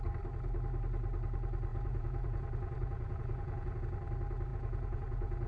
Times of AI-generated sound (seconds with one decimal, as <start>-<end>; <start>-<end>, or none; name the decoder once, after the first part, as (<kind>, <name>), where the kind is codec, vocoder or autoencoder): 1.7-3.8 (vocoder, Vocos); 4.5-5.5